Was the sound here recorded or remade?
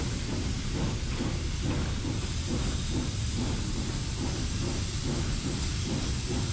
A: remade